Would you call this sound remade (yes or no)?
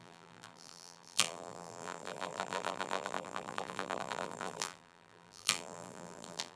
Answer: yes